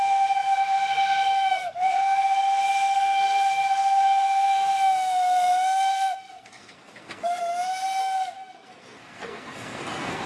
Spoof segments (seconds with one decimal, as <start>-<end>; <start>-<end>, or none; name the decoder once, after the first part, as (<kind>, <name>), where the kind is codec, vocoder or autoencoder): 0.0-7.4 (codec, SNAC); 8.0-10.3